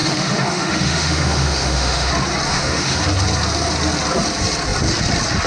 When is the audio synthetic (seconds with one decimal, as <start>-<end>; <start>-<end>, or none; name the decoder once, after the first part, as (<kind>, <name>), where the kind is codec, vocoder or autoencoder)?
0.0-2.1 (autoencoder, DAC-VAE); 2.5-3.0